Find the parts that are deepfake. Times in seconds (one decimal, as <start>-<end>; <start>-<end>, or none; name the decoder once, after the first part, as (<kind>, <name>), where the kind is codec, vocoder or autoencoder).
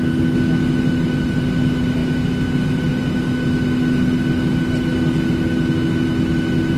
none